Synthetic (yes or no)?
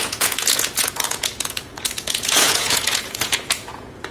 yes